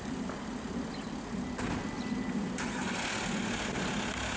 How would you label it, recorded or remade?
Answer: recorded